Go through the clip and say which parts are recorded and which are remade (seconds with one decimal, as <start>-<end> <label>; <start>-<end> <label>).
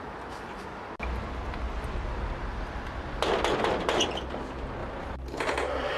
0.0-6.0 recorded